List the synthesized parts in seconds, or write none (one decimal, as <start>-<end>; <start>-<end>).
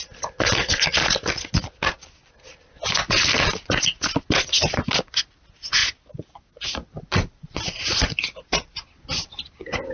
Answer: none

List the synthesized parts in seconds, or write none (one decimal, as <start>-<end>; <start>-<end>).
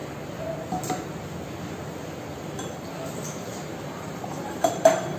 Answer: 3.7-4.7